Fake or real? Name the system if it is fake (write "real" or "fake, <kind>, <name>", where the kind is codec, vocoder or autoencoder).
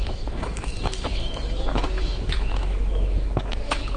fake, autoencoder, DAC-VAE